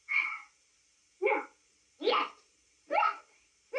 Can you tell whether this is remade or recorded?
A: recorded